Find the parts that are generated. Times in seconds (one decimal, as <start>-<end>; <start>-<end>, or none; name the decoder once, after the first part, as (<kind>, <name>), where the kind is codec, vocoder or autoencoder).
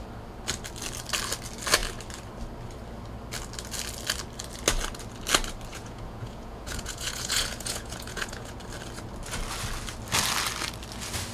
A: 5.7-8.6 (vocoder, Vocos)